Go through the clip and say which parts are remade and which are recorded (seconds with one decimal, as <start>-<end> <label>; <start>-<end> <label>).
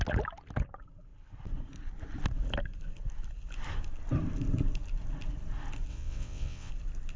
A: 0.0-5.9 recorded; 5.9-6.7 remade; 6.7-7.2 recorded